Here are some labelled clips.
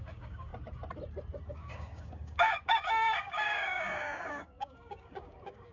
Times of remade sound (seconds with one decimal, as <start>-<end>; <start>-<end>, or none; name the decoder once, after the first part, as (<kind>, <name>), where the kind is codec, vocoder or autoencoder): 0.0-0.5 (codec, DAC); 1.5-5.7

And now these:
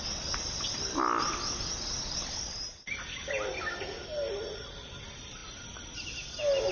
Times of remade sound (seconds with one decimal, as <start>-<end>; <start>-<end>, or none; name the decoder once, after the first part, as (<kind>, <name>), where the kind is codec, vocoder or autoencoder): none

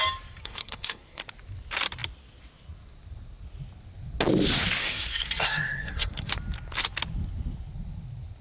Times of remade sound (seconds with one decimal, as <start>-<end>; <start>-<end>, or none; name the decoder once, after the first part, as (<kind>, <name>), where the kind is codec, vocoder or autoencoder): 0.4-1.2 (codec, SNAC); 4.8-6.3